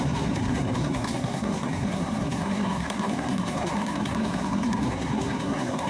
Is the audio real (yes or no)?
no